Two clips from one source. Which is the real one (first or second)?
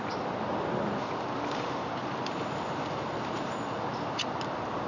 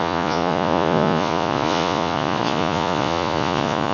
first